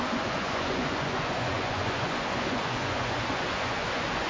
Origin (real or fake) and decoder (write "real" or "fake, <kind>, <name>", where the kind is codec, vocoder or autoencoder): fake, vocoder, Vocos